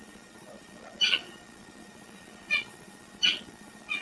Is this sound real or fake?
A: fake